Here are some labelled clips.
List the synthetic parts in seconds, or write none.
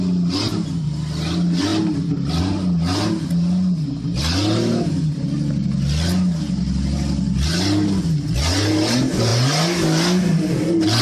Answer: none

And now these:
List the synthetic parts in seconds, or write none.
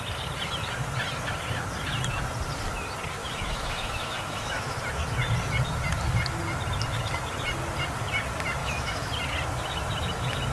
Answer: 3.2-4.8 (autoencoder, DAC-VAE); 8.6-9.1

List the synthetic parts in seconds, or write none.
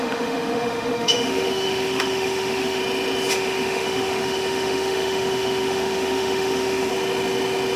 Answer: 0.0-2.8 (autoencoder, DAC-VAE); 3.3-6.9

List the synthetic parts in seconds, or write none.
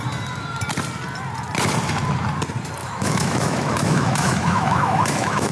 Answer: 2.8-5.5 (autoencoder, DAC-VAE)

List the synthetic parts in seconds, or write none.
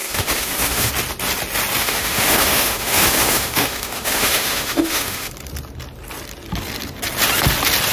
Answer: 0.0-0.9 (autoencoder, DAC-VAE); 1.8-5.3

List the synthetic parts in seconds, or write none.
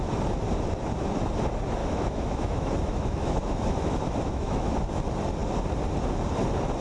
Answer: 1.8-4.9 (autoencoder, DAC-VAE)